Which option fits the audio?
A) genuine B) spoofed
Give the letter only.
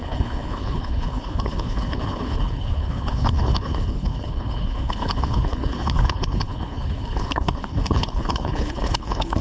B